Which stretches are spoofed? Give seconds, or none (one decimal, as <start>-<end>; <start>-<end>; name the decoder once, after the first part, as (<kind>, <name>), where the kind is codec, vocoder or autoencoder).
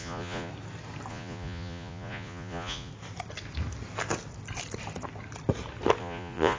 0.0-0.5 (vocoder, Vocos); 1.1-2.9; 6.0-6.6